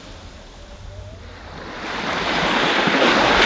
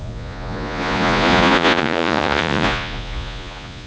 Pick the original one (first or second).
first